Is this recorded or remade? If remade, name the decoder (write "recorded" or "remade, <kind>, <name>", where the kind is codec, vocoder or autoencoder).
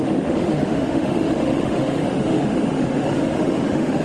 remade, autoencoder, DAC-VAE